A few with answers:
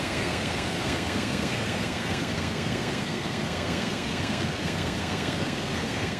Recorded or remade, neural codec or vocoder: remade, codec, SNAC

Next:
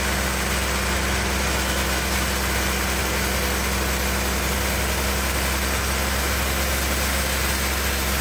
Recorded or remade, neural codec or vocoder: recorded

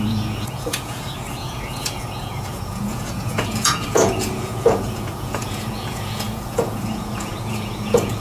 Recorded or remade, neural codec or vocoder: remade, vocoder, Vocos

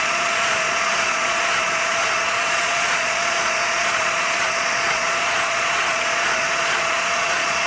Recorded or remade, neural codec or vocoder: remade, vocoder, Vocos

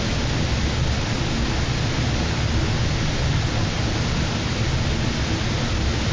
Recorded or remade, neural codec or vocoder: recorded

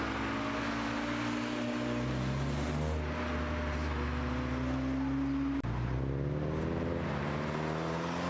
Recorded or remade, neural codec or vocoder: recorded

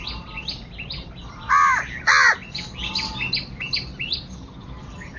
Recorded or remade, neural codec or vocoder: recorded